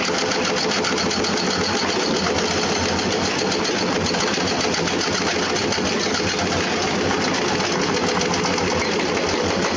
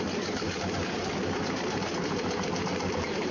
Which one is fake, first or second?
second